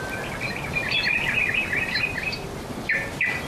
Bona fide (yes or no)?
yes